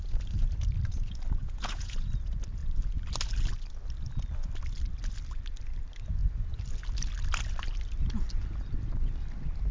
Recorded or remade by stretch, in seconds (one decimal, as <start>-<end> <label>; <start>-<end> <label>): 0.0-1.4 recorded; 1.4-2.1 remade; 2.1-9.7 recorded